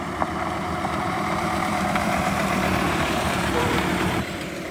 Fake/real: fake